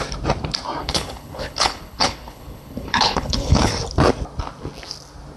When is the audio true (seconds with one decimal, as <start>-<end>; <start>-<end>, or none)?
0.0-0.8; 3.7-5.4